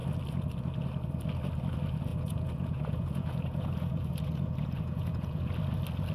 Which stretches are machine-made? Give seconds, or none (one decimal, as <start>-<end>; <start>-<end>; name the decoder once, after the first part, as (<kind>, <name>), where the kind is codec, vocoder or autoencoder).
2.1-5.5 (vocoder, Vocos)